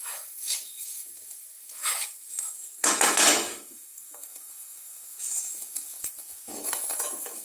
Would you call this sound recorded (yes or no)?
no